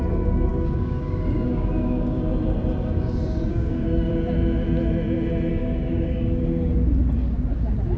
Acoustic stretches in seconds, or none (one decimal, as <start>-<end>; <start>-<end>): 0.0-0.5; 2.2-3.5; 4.1-5.5; 6.4-8.0